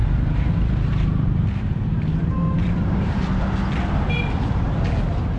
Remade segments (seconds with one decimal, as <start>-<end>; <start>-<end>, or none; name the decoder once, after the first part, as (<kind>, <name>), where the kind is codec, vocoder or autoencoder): 0.0-3.2 (vocoder, BigVGAN v2)